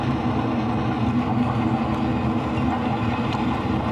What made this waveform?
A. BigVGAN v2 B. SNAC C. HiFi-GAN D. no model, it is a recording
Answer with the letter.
D